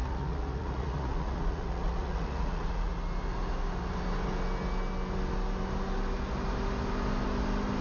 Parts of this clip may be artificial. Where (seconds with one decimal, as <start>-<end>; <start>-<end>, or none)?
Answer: 0.0-2.9